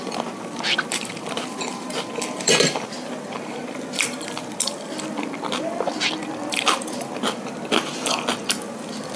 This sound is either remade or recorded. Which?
remade